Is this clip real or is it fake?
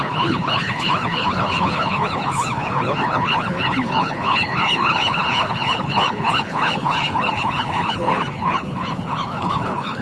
fake